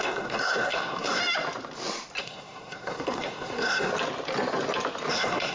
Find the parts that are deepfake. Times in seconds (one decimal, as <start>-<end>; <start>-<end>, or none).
0.0-1.2; 2.2-3.9; 5.1-5.5